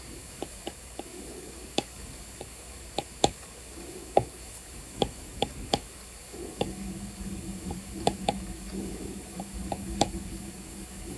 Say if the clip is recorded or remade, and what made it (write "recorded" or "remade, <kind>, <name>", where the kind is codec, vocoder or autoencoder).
remade, codec, DAC